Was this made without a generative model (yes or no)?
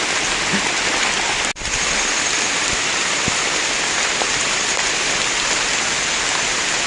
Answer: yes